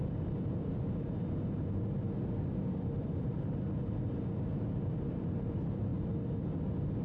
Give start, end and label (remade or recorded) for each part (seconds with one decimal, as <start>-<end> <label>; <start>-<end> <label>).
0.0-7.0 recorded